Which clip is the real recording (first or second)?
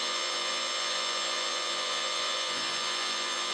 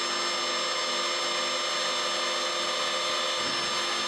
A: second